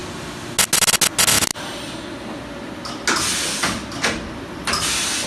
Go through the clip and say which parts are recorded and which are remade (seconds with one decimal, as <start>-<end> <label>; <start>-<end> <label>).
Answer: 0.0-5.3 recorded